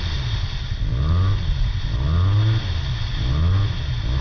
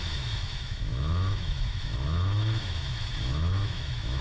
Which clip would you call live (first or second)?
first